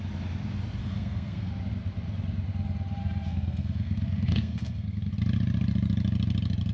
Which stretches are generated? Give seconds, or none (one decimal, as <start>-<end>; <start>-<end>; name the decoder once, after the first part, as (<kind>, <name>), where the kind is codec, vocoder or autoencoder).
0.8-1.5 (codec, SNAC); 3.0-5.1